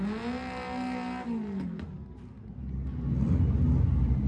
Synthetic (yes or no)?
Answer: no